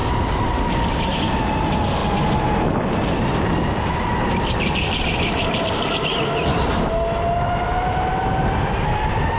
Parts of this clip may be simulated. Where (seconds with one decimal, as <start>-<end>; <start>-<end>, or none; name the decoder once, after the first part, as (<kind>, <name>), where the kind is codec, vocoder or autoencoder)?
none

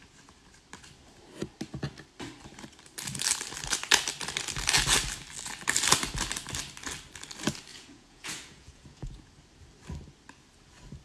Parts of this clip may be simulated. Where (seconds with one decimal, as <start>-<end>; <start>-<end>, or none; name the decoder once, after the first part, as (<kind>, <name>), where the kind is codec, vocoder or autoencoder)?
7.7-9.3 (vocoder, Vocos)

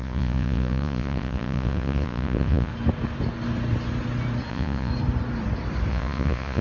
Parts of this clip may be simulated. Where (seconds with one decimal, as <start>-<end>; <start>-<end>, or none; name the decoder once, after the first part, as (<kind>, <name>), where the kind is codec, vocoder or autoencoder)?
0.0-2.7 (vocoder, Vocos); 4.5-4.9; 5.9-6.6

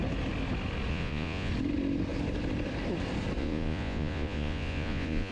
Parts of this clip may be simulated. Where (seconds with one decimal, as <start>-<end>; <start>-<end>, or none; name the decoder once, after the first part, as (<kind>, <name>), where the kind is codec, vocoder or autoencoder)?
0.9-1.5 (vocoder, Vocos); 3.4-5.3

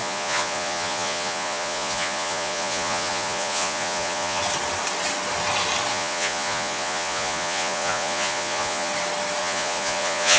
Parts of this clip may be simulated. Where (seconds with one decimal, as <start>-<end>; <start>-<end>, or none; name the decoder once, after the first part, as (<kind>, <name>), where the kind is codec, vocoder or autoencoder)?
0.0-4.4 (vocoder, Vocos); 5.9-8.9; 9.4-10.4

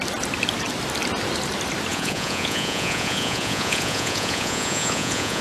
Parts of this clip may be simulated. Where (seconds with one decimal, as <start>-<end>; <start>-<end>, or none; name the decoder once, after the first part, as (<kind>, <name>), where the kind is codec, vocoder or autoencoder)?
1.9-5.4 (vocoder, Vocos)

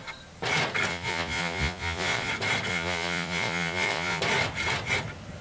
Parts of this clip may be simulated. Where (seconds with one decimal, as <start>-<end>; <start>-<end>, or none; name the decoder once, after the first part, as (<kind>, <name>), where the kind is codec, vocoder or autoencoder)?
0.9-2.3 (vocoder, Vocos); 2.7-4.2